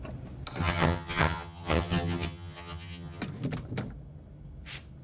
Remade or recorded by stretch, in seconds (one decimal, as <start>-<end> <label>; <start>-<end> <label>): 0.0-0.6 recorded; 0.6-3.2 remade; 3.2-5.0 recorded